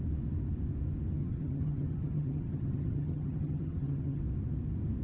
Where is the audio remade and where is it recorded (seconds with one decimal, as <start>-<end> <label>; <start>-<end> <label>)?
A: 0.0-1.2 recorded; 1.2-4.2 remade; 4.2-5.0 recorded

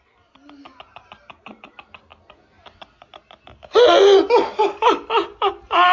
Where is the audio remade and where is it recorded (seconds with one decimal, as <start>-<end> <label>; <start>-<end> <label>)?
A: 0.0-5.9 recorded

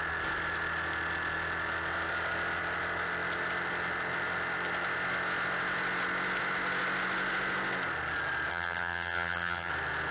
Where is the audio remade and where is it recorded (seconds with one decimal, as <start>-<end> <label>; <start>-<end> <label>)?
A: 0.0-8.5 recorded; 8.5-9.7 remade; 9.7-10.1 recorded

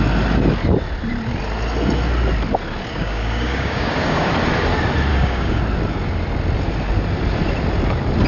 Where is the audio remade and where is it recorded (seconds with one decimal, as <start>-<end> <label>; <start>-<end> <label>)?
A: 0.0-2.9 recorded; 2.9-4.3 remade; 4.3-5.1 recorded; 5.1-5.6 remade; 5.6-8.3 recorded

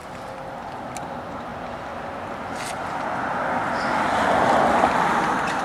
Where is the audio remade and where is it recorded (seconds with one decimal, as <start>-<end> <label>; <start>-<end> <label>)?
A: 0.0-1.1 remade; 1.1-1.5 recorded; 1.5-4.4 remade; 4.4-5.6 recorded

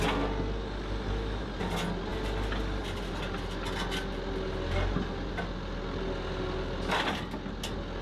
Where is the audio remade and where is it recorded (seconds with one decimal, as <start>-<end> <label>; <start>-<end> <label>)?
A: 0.0-8.0 recorded

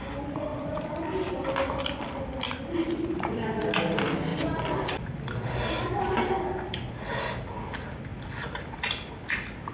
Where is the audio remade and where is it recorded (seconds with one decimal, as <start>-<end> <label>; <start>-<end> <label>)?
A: 0.0-0.5 recorded; 0.5-3.7 remade; 3.7-4.3 recorded; 4.3-5.1 remade; 5.1-8.1 recorded; 8.1-8.7 remade; 8.7-9.7 recorded

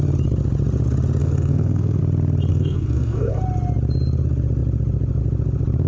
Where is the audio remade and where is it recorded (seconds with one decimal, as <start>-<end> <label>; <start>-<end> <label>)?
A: 0.0-1.2 recorded; 1.2-2.0 remade; 2.0-2.5 recorded; 2.5-3.4 remade; 3.4-5.9 recorded